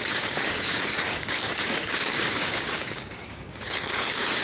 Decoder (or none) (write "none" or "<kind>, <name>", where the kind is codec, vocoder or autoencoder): codec, DAC